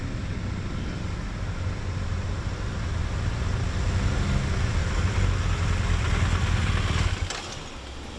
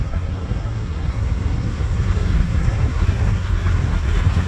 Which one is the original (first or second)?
first